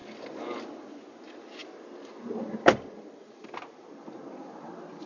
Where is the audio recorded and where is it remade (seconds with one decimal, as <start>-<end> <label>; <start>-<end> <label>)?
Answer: 0.0-5.1 recorded

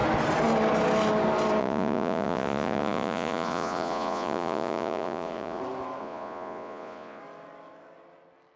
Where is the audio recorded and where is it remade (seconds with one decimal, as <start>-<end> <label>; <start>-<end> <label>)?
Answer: 0.0-1.6 recorded; 1.6-5.6 remade; 5.6-6.0 recorded; 6.0-7.2 remade; 7.2-8.6 recorded

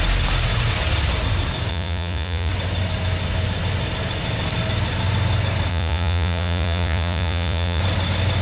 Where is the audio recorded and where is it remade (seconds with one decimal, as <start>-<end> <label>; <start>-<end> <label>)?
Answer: 0.0-1.7 recorded; 1.7-2.5 remade; 2.5-5.7 recorded; 5.7-7.8 remade; 7.8-8.4 recorded